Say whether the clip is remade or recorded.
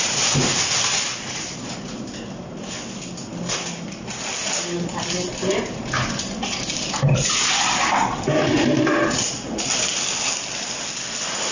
recorded